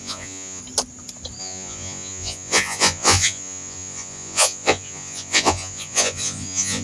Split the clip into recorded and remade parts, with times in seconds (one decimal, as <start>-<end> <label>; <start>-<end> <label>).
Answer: 0.0-0.6 remade; 0.6-1.4 recorded; 1.4-6.8 remade